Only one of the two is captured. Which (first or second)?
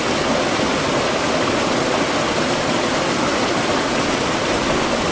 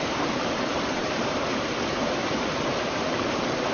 first